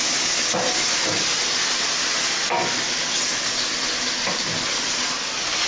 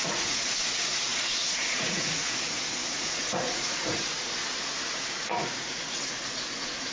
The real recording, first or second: first